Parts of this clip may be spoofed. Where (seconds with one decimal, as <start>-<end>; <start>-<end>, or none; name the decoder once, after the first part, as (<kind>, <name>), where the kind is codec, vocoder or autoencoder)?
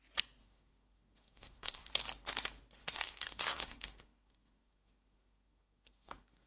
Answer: 0.4-1.9 (codec, SNAC); 2.8-6.5